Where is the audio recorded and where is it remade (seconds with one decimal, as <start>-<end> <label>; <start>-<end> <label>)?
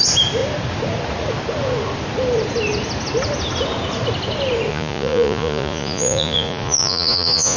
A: 0.0-4.7 recorded; 4.7-7.6 remade